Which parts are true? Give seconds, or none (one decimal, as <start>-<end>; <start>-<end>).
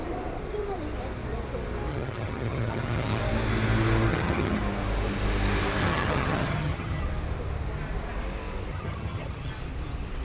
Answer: 0.0-1.9; 3.2-4.1; 4.6-5.8; 7.0-8.7; 9.5-10.2